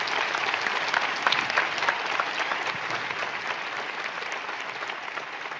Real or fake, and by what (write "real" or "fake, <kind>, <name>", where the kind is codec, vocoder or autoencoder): real